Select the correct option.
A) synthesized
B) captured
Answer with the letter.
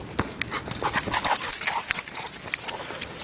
B